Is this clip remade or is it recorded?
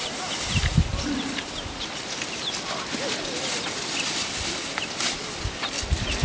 recorded